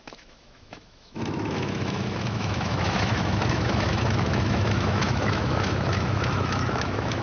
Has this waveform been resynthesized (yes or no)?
yes